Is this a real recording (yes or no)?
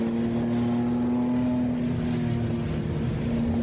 yes